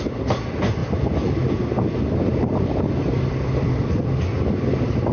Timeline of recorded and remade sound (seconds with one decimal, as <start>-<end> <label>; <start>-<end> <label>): 0.0-0.8 recorded; 0.8-3.9 remade; 3.9-5.1 recorded

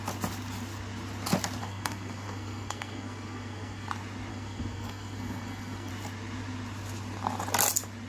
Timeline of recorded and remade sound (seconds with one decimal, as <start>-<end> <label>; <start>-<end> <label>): 0.0-1.6 recorded; 1.6-3.9 remade; 3.9-4.3 recorded; 4.3-5.9 remade; 5.9-8.1 recorded

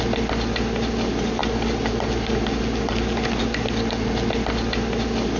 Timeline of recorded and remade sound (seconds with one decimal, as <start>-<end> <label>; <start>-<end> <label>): 0.0-5.4 recorded

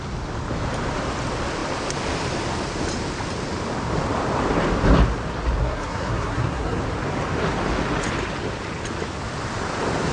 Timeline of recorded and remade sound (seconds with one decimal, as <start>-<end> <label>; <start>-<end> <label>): 0.0-5.6 recorded; 5.6-6.8 remade; 6.8-10.1 recorded

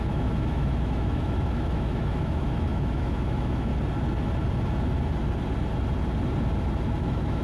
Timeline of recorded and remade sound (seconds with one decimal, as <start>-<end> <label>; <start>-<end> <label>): 0.0-3.7 remade; 3.7-7.0 recorded; 7.0-7.4 remade

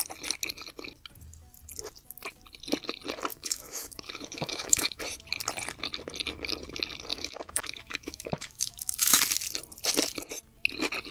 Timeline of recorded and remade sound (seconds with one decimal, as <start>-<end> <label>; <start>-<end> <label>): 0.0-3.3 recorded; 3.3-5.0 remade; 5.0-7.1 recorded; 7.1-9.2 remade; 9.2-11.1 recorded

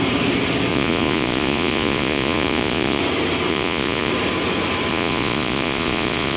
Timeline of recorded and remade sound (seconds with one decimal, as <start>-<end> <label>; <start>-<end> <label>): 0.0-0.7 recorded; 0.7-3.0 remade; 3.0-3.5 recorded; 3.5-4.1 remade; 4.1-4.9 recorded; 4.9-6.4 remade

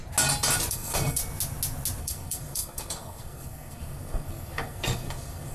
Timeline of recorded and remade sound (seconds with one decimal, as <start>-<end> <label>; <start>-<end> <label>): 0.0-0.7 recorded; 0.7-1.2 remade; 1.2-2.0 recorded; 2.0-5.5 remade